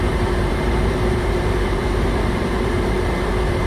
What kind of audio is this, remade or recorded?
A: remade